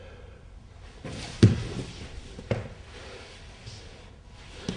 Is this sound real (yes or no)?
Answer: yes